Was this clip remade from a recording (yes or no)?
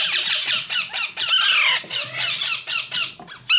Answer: no